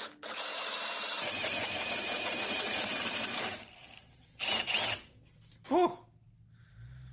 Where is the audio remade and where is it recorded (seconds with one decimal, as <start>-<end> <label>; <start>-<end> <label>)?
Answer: 0.0-0.5 recorded; 0.5-4.8 remade; 4.8-7.1 recorded